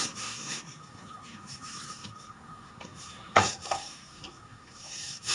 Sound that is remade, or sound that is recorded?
remade